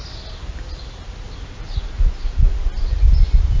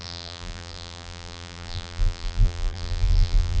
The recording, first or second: first